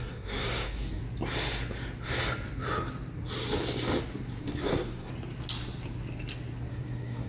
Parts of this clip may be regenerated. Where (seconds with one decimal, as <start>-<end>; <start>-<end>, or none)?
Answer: 0.0-1.0; 4.4-5.1; 6.7-7.3